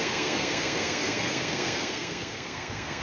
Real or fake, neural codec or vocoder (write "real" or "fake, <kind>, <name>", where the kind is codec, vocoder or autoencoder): fake, codec, SNAC